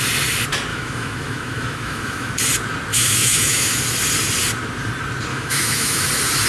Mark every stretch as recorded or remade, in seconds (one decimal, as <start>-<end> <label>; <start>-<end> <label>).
0.0-0.7 recorded; 0.7-2.3 remade; 2.3-2.9 recorded; 2.9-3.8 remade; 3.8-5.3 recorded; 5.3-6.1 remade; 6.1-6.5 recorded